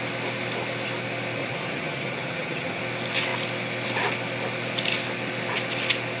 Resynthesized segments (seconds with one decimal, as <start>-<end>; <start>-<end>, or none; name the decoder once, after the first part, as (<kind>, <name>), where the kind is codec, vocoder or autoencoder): 1.4-2.8 (vocoder, HiFi-GAN)